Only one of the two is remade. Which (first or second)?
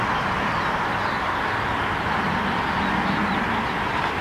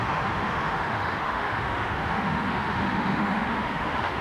second